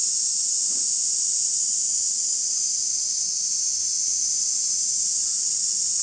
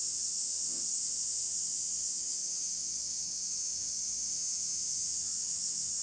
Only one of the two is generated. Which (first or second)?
second